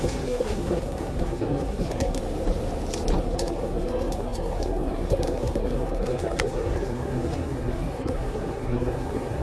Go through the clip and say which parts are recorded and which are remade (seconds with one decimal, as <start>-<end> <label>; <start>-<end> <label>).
0.0-2.2 remade; 2.2-3.2 recorded; 3.2-9.4 remade